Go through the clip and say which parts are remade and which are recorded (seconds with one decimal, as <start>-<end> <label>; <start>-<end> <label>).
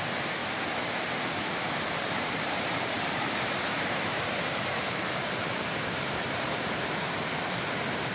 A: 0.0-8.1 remade